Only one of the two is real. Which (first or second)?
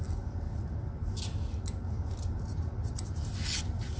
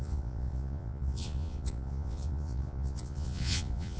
first